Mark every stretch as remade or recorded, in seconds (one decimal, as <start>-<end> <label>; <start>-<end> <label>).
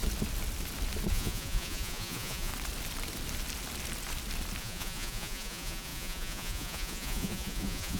0.0-1.1 recorded; 1.1-2.5 remade; 2.5-4.6 recorded; 4.6-8.0 remade